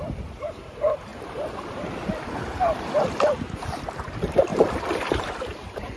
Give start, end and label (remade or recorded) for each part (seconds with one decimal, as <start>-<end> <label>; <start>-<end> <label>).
0.0-6.0 remade